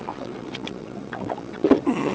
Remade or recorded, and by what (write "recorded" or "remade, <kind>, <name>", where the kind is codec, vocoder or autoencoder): remade, vocoder, WaveNeXt